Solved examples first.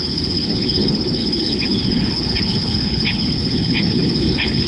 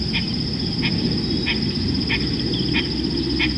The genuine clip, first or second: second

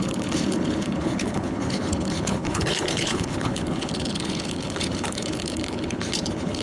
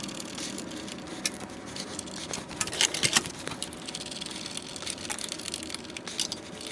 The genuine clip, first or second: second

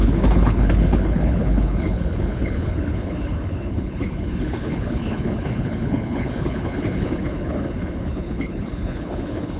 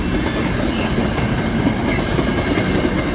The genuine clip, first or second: second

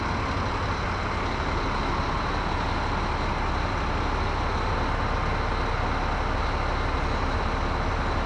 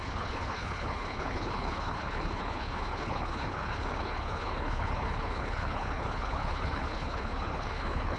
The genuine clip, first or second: first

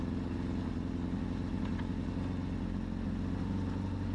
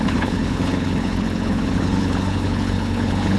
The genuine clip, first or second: first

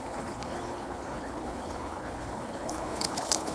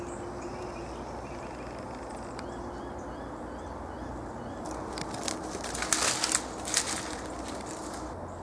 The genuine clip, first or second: second